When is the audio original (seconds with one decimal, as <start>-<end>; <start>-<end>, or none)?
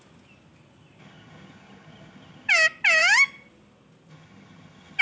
0.0-1.0; 2.5-4.1